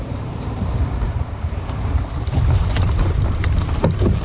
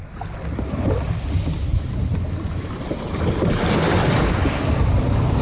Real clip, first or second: second